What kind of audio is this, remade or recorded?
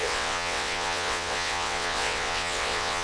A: remade